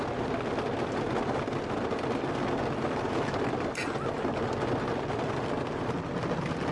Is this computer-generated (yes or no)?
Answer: no